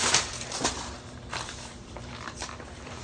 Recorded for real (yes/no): no